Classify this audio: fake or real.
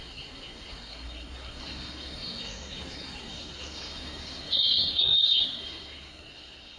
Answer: fake